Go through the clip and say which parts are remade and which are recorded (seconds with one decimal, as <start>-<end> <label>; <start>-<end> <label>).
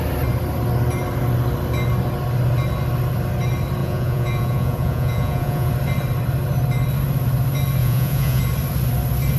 0.0-3.8 recorded; 3.8-5.7 remade; 5.7-7.8 recorded; 7.8-8.4 remade; 8.4-9.4 recorded